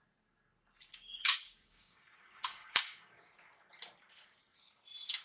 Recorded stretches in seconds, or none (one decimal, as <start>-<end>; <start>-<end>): 0.0-0.9; 3.3-5.2